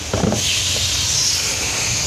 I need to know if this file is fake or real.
real